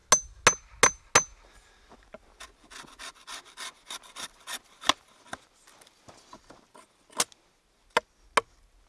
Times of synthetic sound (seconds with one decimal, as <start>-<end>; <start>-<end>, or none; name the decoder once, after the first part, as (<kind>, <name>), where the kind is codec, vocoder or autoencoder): none